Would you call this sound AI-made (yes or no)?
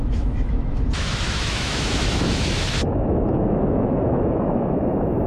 yes